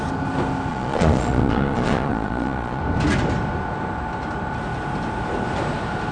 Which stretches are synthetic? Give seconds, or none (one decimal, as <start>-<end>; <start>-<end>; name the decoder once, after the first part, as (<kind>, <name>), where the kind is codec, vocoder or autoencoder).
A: 0.7-2.8 (vocoder, Vocos)